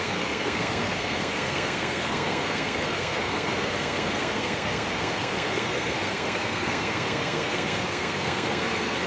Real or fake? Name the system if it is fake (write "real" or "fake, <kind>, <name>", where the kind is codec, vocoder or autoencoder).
fake, codec, SNAC